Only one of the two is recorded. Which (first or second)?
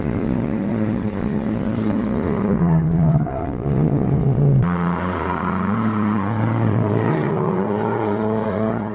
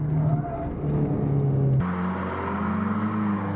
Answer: second